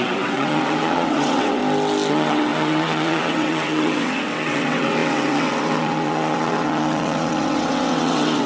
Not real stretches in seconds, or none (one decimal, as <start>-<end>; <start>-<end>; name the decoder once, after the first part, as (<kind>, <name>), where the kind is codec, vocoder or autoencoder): 0.0-1.6 (vocoder, WaveNeXt); 2.1-8.5